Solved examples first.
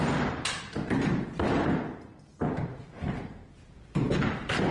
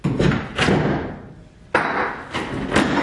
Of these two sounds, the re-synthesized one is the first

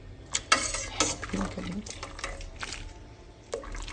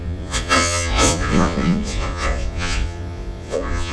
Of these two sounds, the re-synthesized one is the second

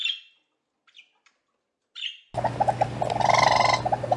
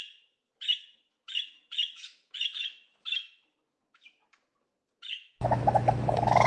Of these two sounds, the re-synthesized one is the second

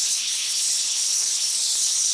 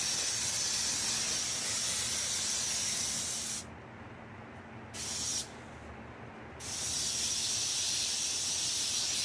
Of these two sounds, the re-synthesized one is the first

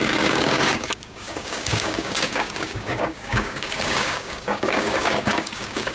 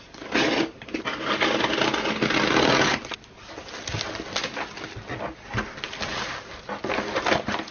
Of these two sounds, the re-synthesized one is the first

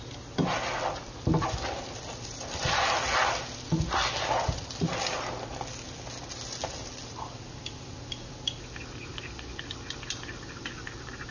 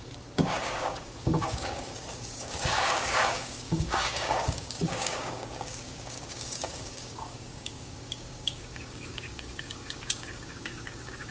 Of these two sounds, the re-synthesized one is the second